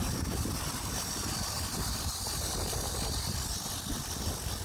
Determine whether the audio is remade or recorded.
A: remade